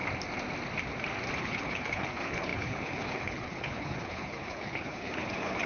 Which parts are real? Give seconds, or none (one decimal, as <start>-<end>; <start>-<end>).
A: 0.0-1.4